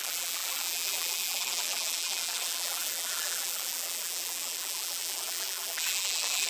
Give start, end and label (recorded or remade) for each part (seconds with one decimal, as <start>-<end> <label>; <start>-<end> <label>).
0.0-6.5 remade